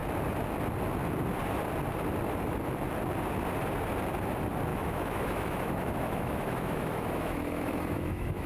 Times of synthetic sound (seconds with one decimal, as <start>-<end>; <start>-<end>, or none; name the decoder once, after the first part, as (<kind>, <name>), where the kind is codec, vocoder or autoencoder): 4.7-8.5 (autoencoder, DAC-VAE)